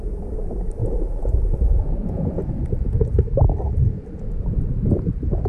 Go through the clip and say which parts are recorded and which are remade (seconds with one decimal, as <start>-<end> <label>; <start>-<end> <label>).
0.0-0.8 recorded; 0.8-2.6 remade; 2.6-5.5 recorded